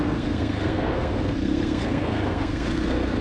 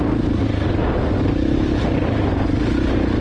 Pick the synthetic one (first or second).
first